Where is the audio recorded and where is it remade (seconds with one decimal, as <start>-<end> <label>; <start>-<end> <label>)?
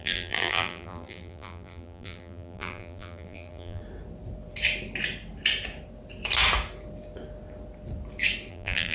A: 0.0-3.8 remade; 3.8-8.5 recorded; 8.5-8.9 remade